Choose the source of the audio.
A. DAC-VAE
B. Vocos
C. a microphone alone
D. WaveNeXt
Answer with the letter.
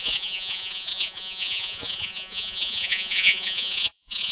B